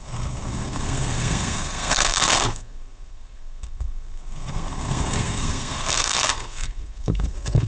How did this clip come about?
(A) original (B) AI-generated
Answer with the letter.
B